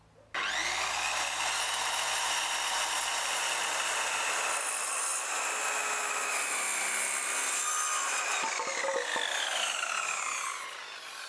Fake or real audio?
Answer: real